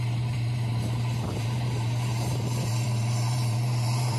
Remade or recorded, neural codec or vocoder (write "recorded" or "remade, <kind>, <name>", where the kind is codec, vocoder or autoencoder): remade, vocoder, BigVGAN v2